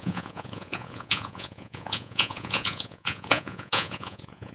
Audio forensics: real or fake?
fake